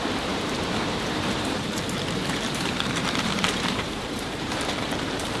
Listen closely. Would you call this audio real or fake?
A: fake